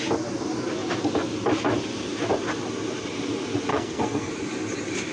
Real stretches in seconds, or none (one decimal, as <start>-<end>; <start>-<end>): 0.0-3.7; 4.3-5.1